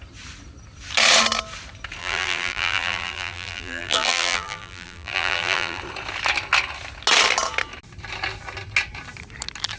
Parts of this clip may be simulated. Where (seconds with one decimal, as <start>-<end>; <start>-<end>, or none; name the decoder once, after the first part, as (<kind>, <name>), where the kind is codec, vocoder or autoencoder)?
2.0-5.8 (vocoder, BigVGAN v2)